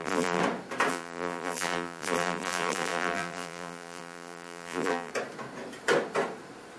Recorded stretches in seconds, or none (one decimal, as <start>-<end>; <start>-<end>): 0.4-0.9; 5.1-6.8